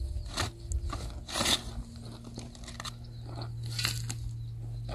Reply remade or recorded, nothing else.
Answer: recorded